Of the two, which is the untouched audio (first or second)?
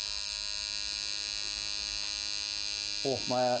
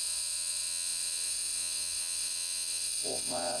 first